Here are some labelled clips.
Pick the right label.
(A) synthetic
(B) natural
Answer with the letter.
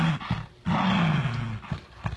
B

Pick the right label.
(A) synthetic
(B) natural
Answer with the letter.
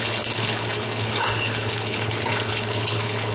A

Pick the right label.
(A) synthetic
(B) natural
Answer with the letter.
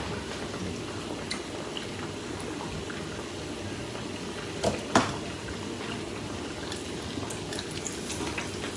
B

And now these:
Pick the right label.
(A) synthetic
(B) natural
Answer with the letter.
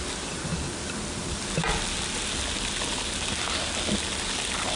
B